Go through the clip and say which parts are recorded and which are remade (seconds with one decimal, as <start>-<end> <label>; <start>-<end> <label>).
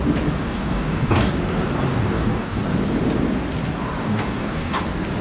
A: 0.0-0.5 recorded; 0.5-1.3 remade; 1.3-1.9 recorded; 1.9-2.6 remade; 2.6-4.0 recorded; 4.0-4.8 remade; 4.8-5.2 recorded